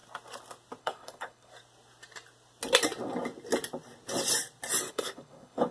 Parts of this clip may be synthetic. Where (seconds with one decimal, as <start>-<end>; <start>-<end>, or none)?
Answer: 0.8-1.5; 4.9-5.7